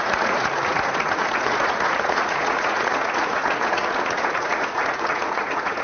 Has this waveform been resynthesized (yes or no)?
yes